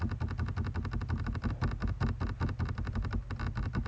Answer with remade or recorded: recorded